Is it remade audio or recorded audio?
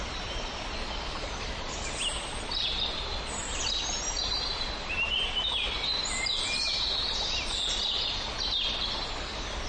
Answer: recorded